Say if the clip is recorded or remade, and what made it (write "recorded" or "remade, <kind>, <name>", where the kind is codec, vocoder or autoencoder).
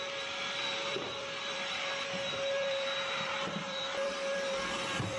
remade, vocoder, BigVGAN v2